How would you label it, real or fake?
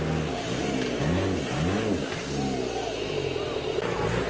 real